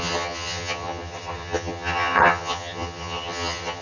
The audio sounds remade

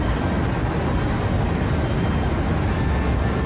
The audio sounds recorded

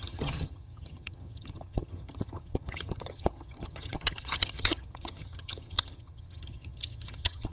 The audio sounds remade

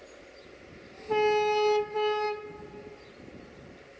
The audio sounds recorded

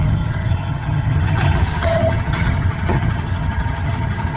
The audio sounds remade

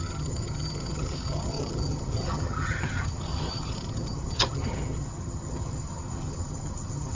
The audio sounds remade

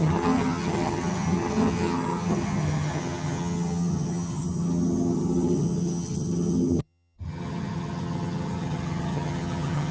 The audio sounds remade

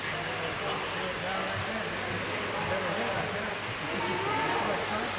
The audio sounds recorded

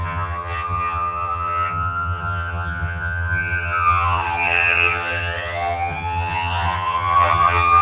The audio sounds remade